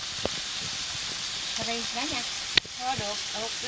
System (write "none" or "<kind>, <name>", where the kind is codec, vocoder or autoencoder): none